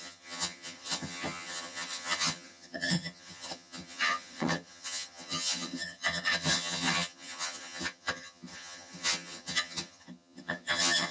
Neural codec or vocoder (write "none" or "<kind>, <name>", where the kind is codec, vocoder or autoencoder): vocoder, HiFi-GAN